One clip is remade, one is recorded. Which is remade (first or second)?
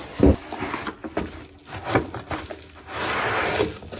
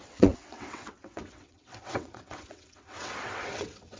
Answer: second